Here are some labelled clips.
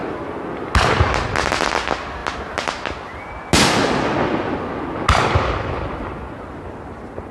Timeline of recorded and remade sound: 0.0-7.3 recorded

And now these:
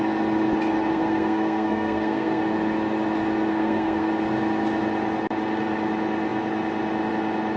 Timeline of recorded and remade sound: 0.0-0.9 recorded; 0.9-2.4 remade; 2.4-3.5 recorded; 3.5-4.1 remade; 4.1-7.6 recorded

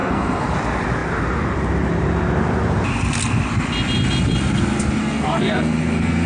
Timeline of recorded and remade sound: 0.0-0.5 remade; 0.5-5.0 recorded; 5.0-6.3 remade

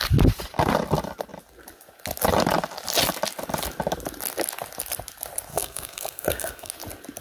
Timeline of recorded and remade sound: 0.0-5.5 recorded; 5.5-6.7 remade; 6.7-7.2 recorded

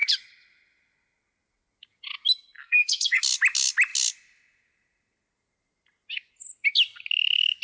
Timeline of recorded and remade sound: 0.0-2.6 recorded; 2.6-3.2 remade; 3.2-7.6 recorded

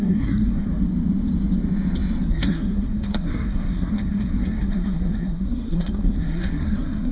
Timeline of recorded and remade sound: 0.0-0.7 remade; 0.7-2.3 recorded; 2.3-7.1 remade

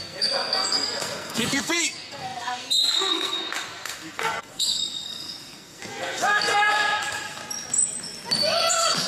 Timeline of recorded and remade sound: 0.0-7.4 remade; 7.4-8.7 recorded; 8.7-9.1 remade